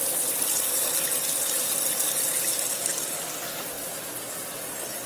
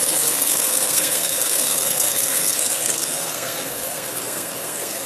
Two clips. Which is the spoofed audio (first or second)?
second